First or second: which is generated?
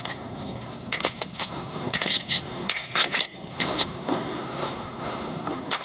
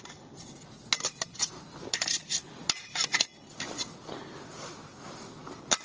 first